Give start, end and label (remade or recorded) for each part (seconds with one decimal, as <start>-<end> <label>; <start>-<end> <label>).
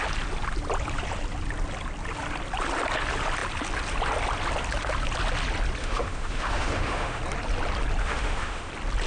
0.0-5.8 recorded; 5.8-7.2 remade; 7.2-8.0 recorded; 8.0-8.7 remade; 8.7-9.1 recorded